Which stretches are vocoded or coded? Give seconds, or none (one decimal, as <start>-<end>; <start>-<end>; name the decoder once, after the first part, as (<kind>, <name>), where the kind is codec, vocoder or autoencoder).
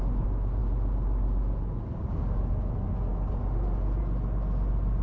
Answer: none